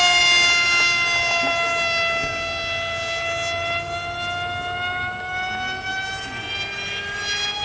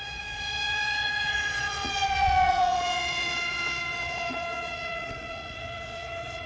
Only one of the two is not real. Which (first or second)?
second